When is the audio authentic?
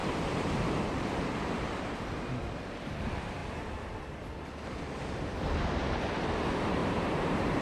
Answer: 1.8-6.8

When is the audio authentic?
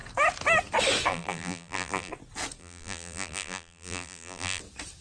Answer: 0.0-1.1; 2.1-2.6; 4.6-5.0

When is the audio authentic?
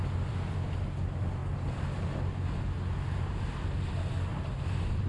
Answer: 0.0-4.3